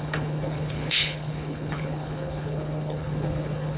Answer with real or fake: fake